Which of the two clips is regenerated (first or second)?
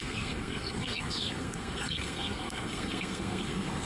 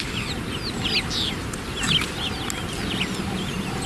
first